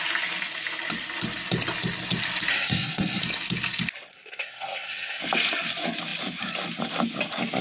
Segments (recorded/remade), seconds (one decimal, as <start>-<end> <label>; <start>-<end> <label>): 0.0-2.5 recorded; 2.5-3.2 remade; 3.2-4.1 recorded; 4.1-5.2 remade; 5.2-7.6 recorded